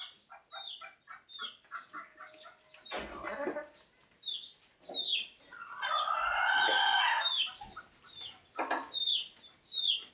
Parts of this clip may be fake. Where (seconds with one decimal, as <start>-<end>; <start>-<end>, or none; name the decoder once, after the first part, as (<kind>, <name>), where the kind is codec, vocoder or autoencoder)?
none

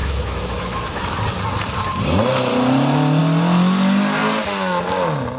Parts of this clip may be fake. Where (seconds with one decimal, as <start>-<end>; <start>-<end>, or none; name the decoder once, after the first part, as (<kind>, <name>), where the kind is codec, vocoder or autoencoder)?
0.0-1.0 (autoencoder, DAC-VAE)

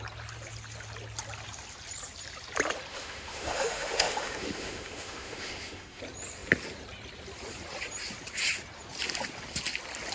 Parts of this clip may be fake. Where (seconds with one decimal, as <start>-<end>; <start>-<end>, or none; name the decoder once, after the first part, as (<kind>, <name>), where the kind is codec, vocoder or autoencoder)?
2.9-6.0 (autoencoder, DAC-VAE)

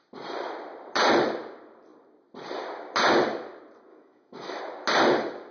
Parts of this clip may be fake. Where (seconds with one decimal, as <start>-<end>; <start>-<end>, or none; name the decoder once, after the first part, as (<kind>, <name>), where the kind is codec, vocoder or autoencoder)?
3.9-4.6 (autoencoder, DAC-VAE)